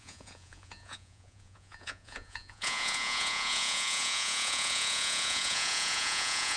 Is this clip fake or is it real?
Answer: fake